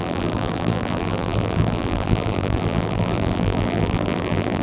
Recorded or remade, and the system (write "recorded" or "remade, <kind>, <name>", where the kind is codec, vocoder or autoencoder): remade, vocoder, BigVGAN v2